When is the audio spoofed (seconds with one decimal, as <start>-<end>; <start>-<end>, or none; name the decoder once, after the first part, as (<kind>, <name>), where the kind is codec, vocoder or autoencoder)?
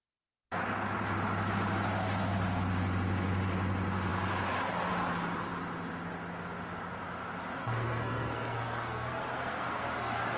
7.6-10.4 (codec, SNAC)